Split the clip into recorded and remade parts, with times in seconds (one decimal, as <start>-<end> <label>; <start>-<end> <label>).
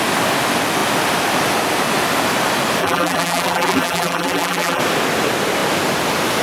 0.0-2.8 recorded; 2.8-4.8 remade; 4.8-6.4 recorded